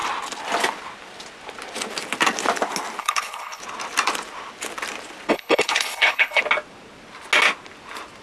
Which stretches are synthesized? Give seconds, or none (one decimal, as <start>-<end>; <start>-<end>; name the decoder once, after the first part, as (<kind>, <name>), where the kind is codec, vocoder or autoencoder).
3.0-3.6 (codec, HILCodec); 5.3-6.4